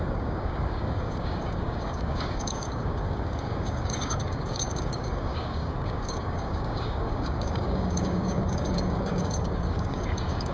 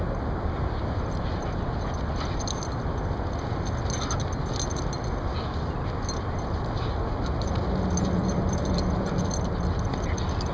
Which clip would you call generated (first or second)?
first